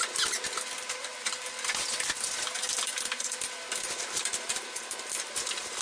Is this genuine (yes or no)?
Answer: yes